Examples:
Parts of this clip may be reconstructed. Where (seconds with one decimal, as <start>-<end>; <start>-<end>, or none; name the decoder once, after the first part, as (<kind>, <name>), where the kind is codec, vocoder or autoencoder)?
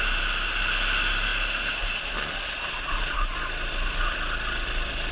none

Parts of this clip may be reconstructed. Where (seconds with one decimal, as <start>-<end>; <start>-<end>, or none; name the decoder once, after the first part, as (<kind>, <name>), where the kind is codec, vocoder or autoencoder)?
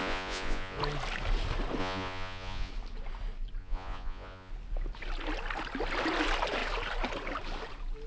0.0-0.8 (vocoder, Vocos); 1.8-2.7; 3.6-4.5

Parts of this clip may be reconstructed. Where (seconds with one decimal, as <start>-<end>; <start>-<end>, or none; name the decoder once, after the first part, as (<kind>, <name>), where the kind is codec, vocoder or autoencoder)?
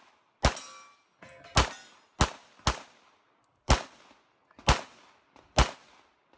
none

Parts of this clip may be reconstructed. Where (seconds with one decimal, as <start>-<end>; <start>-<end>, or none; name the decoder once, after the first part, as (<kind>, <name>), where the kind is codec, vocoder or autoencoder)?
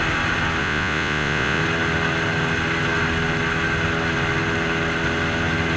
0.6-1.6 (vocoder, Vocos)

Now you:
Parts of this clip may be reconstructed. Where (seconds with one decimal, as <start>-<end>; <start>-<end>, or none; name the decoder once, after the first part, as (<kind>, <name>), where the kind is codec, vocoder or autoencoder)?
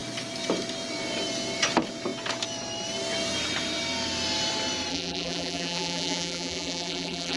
4.9-7.4 (vocoder, BigVGAN v2)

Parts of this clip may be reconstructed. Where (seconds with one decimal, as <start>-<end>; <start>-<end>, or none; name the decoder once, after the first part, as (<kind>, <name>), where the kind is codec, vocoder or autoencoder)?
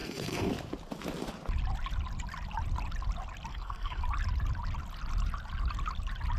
0.0-0.5 (codec, SNAC); 3.5-4.0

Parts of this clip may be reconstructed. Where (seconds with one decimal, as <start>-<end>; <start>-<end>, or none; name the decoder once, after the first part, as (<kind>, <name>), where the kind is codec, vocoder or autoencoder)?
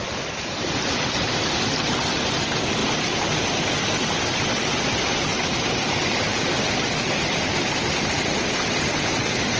5.3-6.5 (vocoder, BigVGAN v2)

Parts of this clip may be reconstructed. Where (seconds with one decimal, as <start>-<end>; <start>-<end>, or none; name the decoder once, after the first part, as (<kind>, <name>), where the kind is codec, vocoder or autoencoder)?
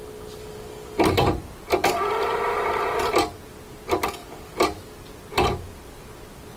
none